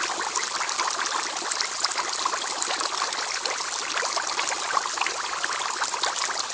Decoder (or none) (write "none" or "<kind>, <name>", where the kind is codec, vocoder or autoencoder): none